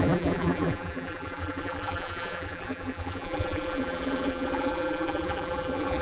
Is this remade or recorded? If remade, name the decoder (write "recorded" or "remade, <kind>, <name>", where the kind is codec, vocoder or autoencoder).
remade, vocoder, BigVGAN v2